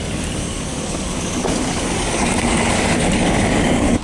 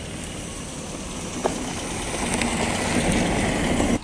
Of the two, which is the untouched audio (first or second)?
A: second